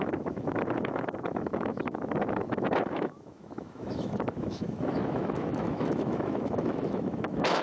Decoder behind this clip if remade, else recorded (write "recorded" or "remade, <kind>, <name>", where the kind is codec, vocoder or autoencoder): remade, autoencoder, DAC-VAE